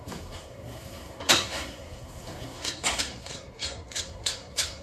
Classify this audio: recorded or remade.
remade